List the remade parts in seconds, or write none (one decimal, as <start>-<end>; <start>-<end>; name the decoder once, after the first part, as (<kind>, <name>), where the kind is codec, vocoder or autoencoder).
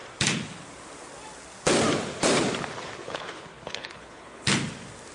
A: 3.0-4.4 (codec, HILCodec)